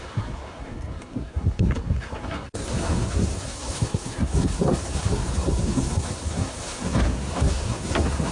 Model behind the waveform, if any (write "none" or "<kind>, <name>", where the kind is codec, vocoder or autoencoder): codec, SNAC